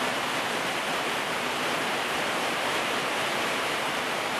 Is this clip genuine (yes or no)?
yes